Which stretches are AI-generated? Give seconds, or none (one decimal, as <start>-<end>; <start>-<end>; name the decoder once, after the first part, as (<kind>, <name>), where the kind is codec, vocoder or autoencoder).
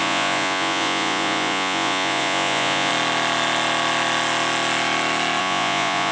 0.0-2.9 (vocoder, Vocos); 5.4-6.1